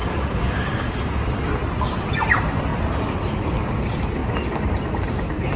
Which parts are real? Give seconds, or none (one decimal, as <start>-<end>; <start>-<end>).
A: 1.4-5.6